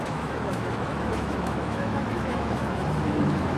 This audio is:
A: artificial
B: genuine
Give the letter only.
A